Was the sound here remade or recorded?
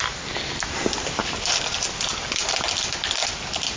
recorded